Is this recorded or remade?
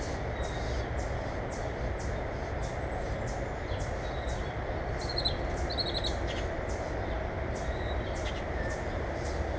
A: recorded